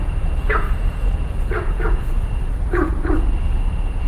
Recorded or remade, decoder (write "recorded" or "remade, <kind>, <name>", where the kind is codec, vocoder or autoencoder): remade, vocoder, Vocos